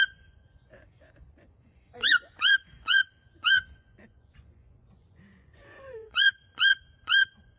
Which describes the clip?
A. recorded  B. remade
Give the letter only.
B